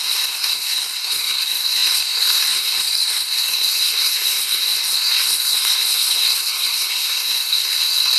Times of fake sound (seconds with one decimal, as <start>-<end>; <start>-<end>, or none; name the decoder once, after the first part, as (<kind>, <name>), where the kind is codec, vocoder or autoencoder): 0.0-8.2 (codec, SNAC)

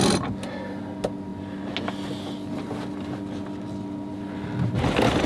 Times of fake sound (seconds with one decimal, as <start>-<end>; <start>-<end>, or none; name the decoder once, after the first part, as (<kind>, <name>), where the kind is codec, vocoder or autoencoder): none

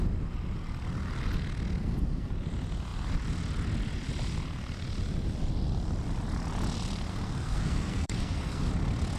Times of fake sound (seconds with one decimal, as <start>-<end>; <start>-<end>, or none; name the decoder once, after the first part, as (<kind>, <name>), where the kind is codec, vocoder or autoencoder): 1.8-2.3 (codec, SNAC); 7.1-8.7

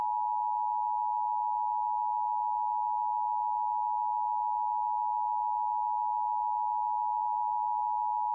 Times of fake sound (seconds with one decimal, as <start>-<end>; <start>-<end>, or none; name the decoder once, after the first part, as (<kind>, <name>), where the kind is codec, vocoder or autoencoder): 7.2-7.8 (autoencoder, DAC-VAE)

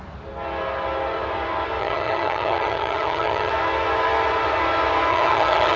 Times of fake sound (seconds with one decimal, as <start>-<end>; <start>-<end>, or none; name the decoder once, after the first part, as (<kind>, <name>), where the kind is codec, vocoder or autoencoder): 1.8-3.5 (vocoder, HiFi-GAN); 5.1-5.8